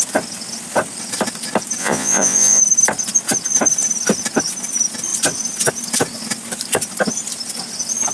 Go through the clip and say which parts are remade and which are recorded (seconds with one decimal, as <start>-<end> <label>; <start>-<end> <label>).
0.0-1.8 recorded; 1.8-2.6 remade; 2.6-8.1 recorded